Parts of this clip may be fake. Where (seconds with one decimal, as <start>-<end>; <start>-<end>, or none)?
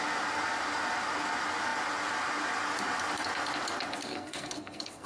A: 4.0-5.1